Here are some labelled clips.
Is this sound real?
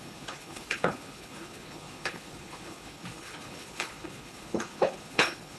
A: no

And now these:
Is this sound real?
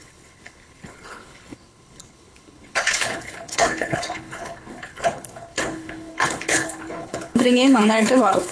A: no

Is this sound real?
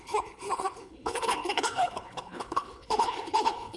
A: no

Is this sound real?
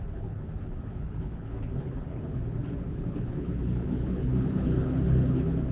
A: no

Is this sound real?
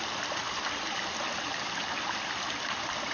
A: yes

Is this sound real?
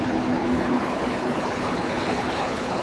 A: no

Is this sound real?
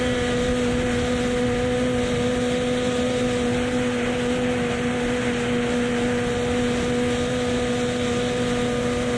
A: yes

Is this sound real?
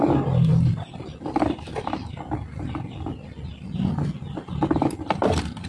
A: yes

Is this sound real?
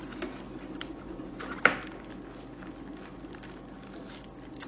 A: yes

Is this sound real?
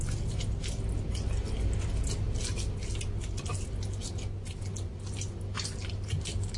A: yes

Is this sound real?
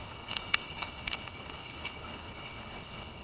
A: no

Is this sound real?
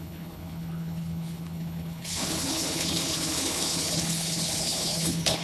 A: no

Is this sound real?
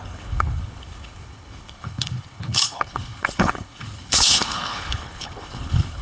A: no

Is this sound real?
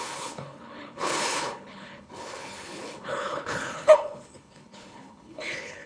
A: no